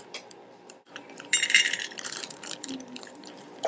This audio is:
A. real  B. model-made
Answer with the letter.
B